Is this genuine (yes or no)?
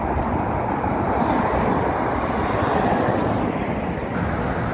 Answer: yes